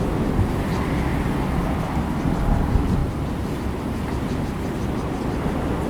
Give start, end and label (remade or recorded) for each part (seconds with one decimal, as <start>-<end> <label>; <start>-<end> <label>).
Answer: 0.0-1.1 recorded; 1.1-2.3 remade; 2.3-3.0 recorded; 3.0-3.6 remade; 3.6-5.9 recorded